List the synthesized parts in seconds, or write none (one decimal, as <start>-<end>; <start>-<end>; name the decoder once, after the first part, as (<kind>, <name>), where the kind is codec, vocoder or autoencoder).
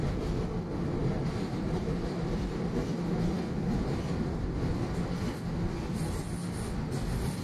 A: 1.0-2.7 (vocoder, BigVGAN v2)